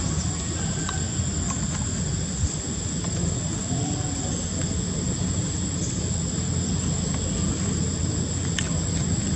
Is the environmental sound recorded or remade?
recorded